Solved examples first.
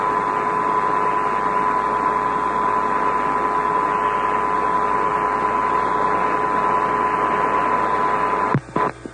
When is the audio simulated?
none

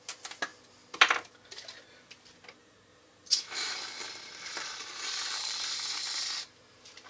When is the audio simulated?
2.6-5.6

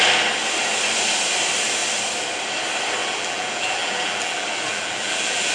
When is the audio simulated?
3.0-5.5

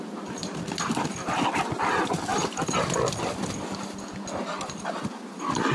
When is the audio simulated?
none

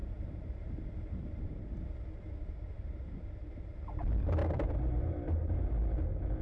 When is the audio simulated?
0.0-3.8; 4.4-5.7

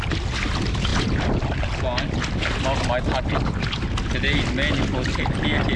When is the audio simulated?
0.9-1.8